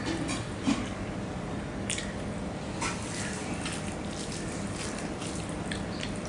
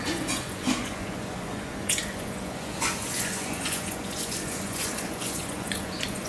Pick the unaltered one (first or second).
first